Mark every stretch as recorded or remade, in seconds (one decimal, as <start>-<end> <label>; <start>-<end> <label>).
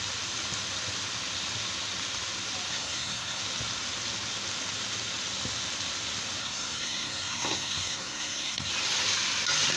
0.0-2.7 recorded; 2.7-3.4 remade; 3.4-6.4 recorded; 6.4-8.7 remade; 8.7-9.8 recorded